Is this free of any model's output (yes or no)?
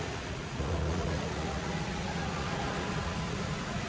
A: no